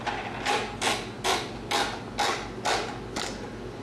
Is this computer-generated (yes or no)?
no